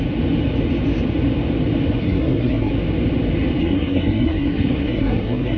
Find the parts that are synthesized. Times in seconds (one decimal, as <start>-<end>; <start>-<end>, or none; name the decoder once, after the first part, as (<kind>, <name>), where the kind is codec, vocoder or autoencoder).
2.0-2.7 (codec, SNAC); 3.6-5.6